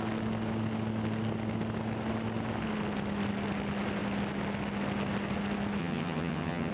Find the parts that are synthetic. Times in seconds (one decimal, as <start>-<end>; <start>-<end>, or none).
5.8-6.7